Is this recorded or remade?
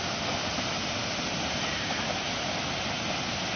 recorded